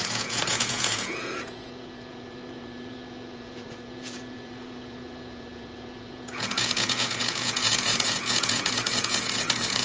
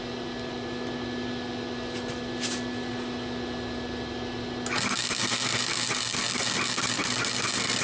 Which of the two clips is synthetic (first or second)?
first